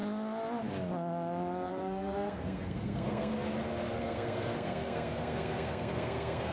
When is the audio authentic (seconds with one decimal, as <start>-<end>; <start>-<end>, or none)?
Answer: 0.0-1.7; 3.3-4.0